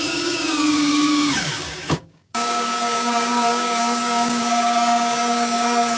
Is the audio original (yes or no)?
no